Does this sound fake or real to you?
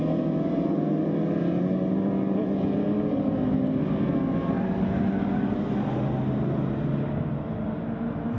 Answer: real